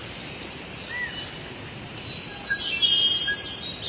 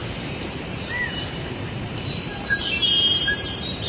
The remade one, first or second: second